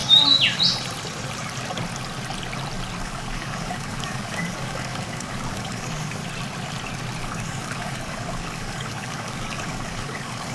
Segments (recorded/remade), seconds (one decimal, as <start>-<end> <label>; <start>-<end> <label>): 0.0-3.0 recorded; 3.0-6.2 remade; 6.2-7.2 recorded; 7.2-10.5 remade